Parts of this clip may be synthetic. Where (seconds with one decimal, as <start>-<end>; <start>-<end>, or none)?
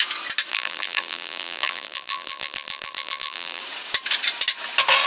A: 0.5-3.6